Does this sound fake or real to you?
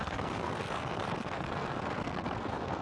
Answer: fake